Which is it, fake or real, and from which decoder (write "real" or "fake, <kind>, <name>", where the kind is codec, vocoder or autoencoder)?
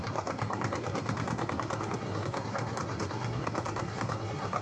fake, codec, SNAC